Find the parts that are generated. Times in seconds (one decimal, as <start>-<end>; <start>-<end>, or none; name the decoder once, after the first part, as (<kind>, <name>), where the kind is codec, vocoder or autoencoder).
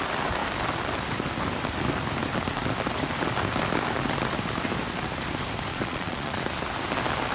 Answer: 5.7-6.4 (vocoder, Vocos)